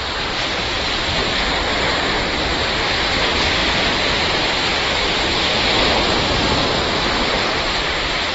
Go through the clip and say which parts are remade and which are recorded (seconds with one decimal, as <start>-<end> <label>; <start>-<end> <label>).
0.0-8.3 recorded